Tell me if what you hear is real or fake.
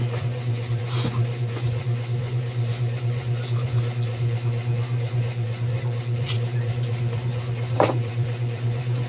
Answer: fake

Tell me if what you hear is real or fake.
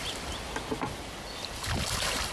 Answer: real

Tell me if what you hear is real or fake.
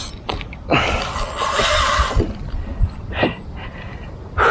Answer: fake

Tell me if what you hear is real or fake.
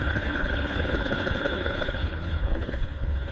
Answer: fake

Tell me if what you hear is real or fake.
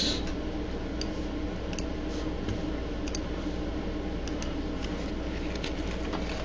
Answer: real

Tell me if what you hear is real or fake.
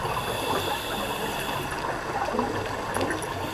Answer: real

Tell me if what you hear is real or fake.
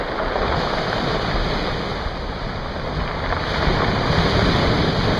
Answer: real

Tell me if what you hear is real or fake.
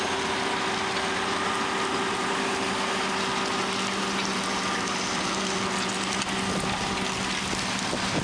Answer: real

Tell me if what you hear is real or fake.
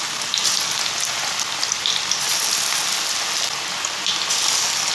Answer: real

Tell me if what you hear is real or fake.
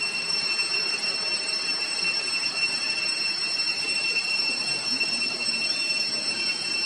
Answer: fake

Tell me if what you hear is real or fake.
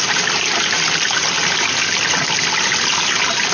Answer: real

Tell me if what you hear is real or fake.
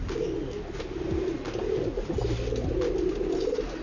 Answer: real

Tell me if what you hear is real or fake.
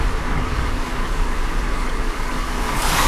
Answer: fake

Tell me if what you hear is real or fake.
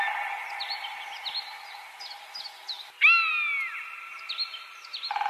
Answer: real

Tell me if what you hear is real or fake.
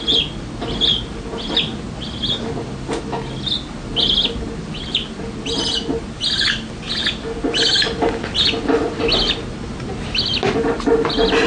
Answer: real